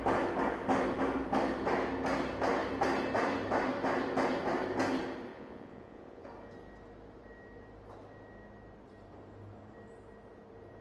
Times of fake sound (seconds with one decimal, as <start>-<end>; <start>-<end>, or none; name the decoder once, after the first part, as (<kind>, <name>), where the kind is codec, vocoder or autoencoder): 5.3-6.3 (vocoder, Vocos)